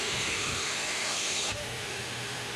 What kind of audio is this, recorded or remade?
remade